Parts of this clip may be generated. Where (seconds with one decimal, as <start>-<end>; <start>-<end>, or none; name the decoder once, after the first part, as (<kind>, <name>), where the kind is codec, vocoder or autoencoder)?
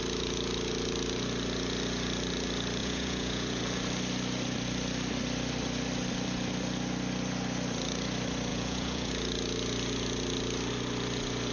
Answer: 2.8-3.6 (vocoder, Vocos); 8.5-9.1